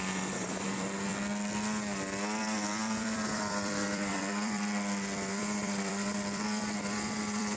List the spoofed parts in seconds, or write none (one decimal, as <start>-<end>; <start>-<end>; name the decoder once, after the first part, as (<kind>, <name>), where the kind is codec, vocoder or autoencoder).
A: 0.0-1.1 (vocoder, BigVGAN v2); 2.4-7.6